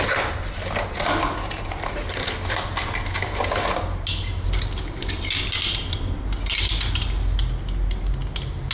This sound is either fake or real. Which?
real